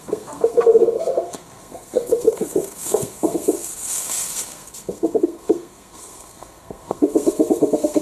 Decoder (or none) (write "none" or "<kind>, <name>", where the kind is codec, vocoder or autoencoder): codec, SNAC